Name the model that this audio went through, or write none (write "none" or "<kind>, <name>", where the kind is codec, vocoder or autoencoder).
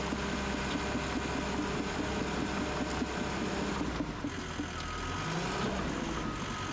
none